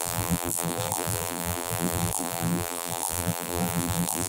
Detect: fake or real fake